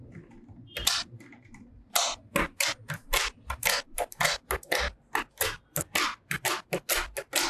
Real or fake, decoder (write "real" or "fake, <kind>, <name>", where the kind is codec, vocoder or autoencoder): real